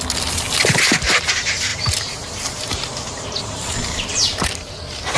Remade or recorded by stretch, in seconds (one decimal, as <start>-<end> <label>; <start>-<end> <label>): 0.0-1.7 recorded; 1.7-4.7 remade; 4.7-5.2 recorded